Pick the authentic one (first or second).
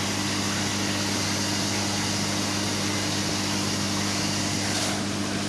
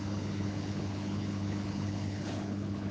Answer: first